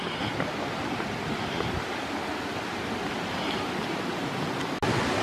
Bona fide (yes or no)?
yes